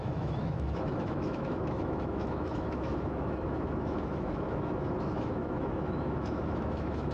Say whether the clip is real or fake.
fake